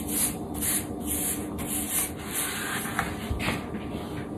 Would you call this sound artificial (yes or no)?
no